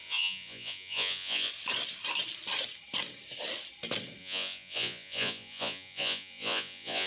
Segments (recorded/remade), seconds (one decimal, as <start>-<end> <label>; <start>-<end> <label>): 0.0-1.5 remade; 1.5-4.2 recorded; 4.2-7.1 remade